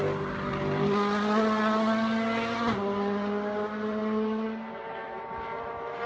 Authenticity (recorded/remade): recorded